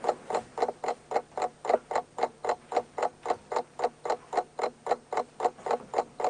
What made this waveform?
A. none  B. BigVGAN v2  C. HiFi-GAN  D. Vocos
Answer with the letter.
A